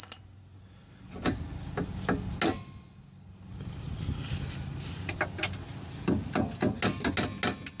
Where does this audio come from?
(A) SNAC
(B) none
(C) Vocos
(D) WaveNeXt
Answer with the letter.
B